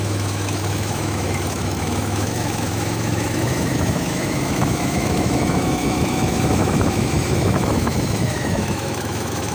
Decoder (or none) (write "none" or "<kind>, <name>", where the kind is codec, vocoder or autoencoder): autoencoder, DAC-VAE